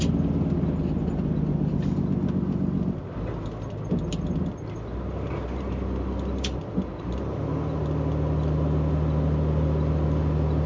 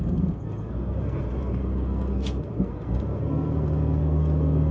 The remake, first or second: second